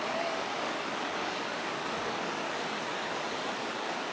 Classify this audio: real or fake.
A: fake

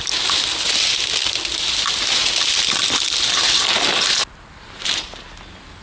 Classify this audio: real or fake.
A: real